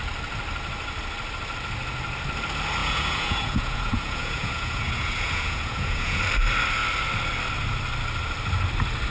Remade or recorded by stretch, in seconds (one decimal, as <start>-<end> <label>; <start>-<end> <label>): 0.0-2.8 recorded; 2.8-6.2 remade; 6.2-9.1 recorded